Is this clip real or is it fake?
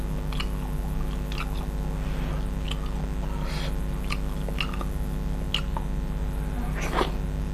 real